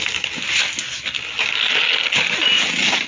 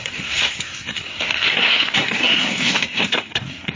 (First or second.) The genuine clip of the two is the first